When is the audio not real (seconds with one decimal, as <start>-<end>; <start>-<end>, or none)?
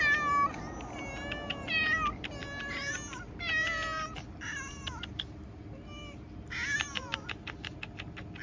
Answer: none